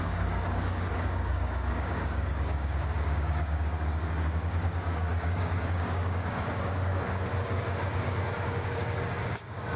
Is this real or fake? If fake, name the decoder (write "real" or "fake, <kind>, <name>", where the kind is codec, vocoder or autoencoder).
fake, codec, DAC